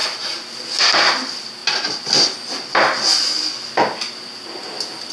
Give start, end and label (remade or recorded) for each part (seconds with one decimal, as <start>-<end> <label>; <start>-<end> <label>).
0.0-5.1 recorded